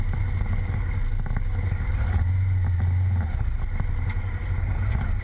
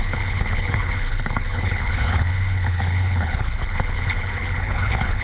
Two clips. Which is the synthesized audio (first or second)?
second